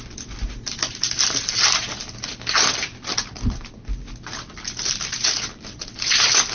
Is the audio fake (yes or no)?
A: no